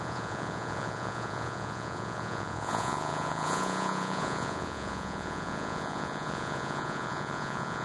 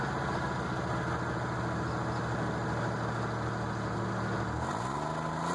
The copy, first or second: first